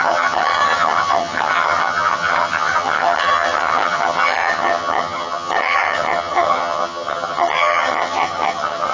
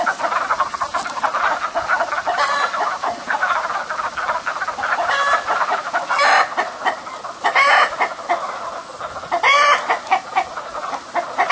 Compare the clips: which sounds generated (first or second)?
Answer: first